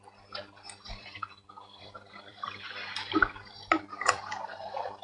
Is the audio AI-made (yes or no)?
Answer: yes